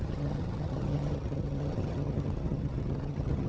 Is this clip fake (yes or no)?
yes